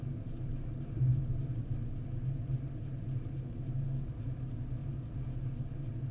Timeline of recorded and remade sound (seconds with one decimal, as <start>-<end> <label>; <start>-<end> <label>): 0.0-6.1 recorded